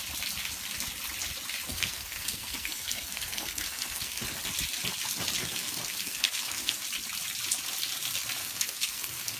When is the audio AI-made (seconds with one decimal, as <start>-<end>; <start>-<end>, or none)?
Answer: 1.7-4.2; 5.4-6.8; 8.4-9.4